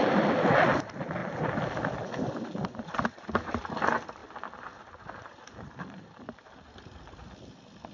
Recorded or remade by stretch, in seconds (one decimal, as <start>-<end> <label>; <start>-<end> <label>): 0.0-7.9 recorded

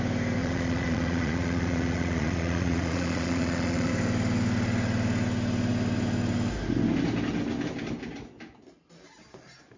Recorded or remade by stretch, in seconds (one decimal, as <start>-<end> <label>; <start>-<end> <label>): 0.0-0.4 recorded; 0.4-3.9 remade; 3.9-9.8 recorded

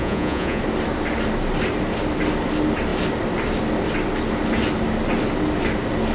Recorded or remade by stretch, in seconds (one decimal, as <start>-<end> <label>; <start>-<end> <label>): 0.0-0.6 remade; 0.6-6.1 recorded